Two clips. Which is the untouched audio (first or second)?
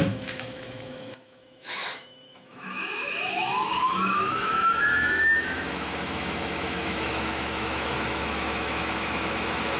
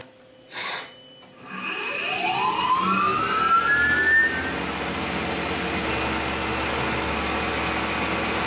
second